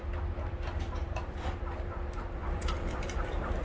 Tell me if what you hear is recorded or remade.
remade